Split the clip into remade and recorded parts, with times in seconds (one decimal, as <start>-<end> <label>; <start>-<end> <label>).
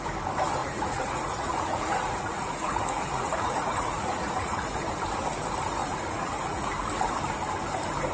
0.0-0.6 recorded; 0.6-4.8 remade; 4.8-5.8 recorded; 5.8-6.7 remade; 6.7-8.1 recorded